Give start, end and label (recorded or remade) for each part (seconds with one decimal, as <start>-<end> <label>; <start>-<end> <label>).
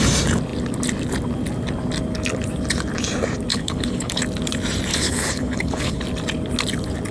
0.0-3.5 recorded; 3.5-4.2 remade; 4.2-4.9 recorded; 4.9-6.0 remade; 6.0-7.1 recorded